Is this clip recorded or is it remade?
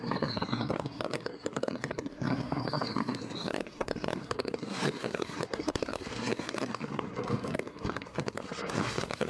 remade